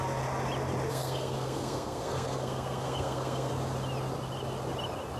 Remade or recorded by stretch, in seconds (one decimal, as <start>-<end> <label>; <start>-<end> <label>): 0.0-0.9 recorded; 0.9-3.5 remade; 3.5-5.2 recorded